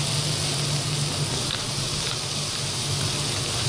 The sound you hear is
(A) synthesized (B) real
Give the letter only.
B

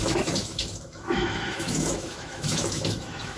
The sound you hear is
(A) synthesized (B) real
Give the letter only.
A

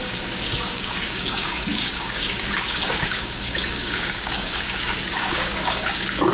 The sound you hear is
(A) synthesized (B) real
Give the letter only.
A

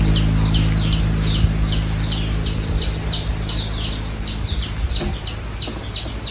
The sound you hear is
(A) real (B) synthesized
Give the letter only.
A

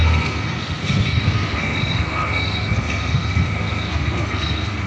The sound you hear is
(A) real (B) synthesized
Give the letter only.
B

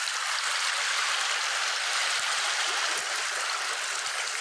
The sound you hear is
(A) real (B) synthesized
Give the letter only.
B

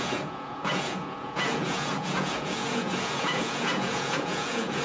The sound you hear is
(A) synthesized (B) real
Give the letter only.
A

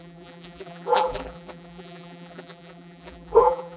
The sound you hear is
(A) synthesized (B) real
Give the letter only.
A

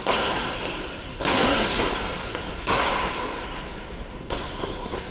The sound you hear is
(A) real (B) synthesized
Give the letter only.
B